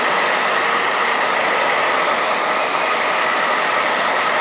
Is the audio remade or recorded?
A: recorded